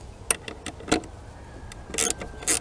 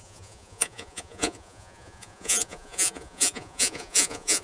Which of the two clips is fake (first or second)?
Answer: second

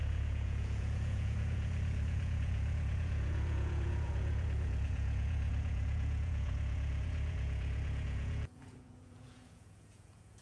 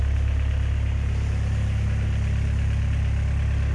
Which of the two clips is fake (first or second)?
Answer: first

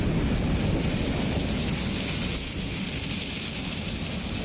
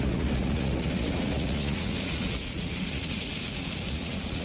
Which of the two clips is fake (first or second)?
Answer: second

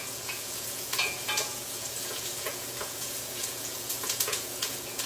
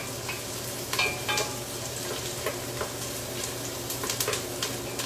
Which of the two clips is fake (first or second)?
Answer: first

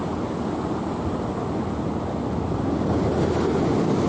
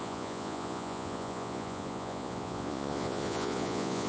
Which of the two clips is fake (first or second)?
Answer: second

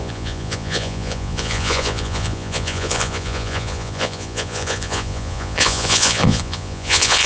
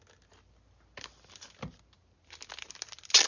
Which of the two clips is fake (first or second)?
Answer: first